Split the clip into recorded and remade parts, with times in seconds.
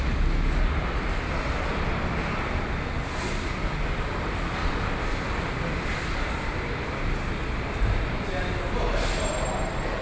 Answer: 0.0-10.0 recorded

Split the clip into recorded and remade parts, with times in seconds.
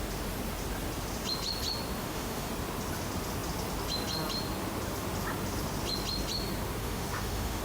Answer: 0.0-2.0 recorded; 2.0-2.5 remade; 2.5-6.8 recorded; 6.8-7.6 remade